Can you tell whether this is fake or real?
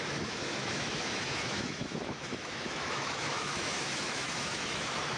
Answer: fake